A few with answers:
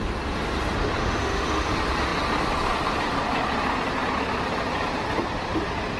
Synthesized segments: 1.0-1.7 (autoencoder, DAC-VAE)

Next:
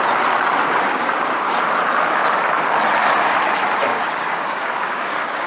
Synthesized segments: 0.7-1.6 (codec, DAC); 3.9-5.5